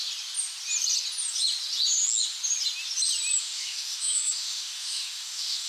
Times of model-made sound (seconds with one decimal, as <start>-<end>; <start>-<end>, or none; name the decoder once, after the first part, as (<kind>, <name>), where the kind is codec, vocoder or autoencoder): 3.4-5.7 (autoencoder, DAC-VAE)

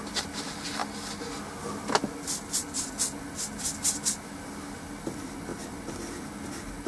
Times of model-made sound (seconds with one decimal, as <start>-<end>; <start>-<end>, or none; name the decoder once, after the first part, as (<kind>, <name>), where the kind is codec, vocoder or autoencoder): none

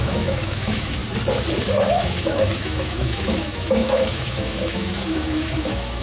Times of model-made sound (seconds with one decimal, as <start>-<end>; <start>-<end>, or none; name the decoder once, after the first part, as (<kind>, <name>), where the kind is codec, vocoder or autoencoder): 0.0-1.0 (autoencoder, DAC-VAE); 1.9-6.0

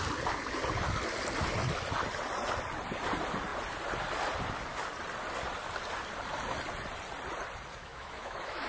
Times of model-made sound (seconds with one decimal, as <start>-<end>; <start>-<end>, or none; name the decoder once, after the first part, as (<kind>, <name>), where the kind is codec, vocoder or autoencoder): 7.8-8.7 (autoencoder, DAC-VAE)

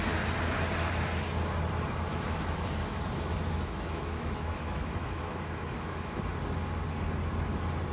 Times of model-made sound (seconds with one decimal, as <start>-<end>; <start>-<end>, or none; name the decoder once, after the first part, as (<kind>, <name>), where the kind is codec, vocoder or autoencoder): 2.1-6.2 (autoencoder, DAC-VAE)

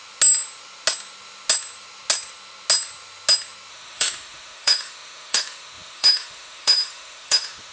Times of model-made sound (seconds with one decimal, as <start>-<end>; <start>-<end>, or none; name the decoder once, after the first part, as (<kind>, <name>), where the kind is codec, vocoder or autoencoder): 3.7-7.7 (autoencoder, DAC-VAE)

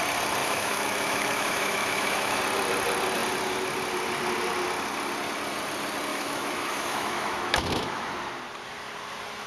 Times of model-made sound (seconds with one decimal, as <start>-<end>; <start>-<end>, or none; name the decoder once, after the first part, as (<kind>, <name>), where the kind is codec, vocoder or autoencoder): 0.4-2.4 (autoencoder, DAC-VAE); 6.1-8.1

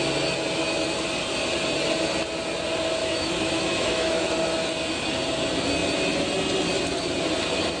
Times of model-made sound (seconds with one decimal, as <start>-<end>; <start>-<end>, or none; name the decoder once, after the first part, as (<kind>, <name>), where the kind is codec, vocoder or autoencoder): 3.0-4.3 (autoencoder, DAC-VAE)